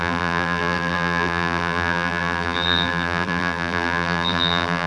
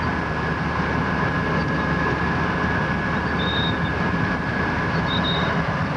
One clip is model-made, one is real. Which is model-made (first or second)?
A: first